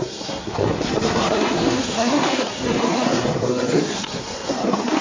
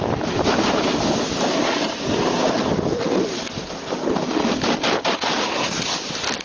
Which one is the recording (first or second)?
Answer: second